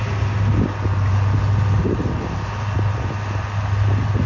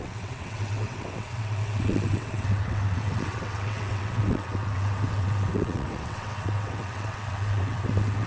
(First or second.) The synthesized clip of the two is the second